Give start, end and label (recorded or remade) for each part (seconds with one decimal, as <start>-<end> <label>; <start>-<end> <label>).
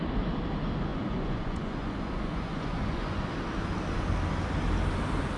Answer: 0.0-0.9 recorded; 0.9-3.3 remade; 3.3-5.4 recorded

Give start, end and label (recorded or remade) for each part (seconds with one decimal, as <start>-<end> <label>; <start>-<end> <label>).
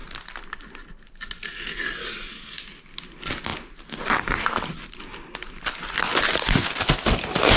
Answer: 0.0-7.6 recorded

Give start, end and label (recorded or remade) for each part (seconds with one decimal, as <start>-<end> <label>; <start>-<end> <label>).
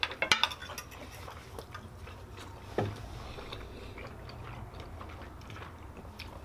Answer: 0.0-6.4 recorded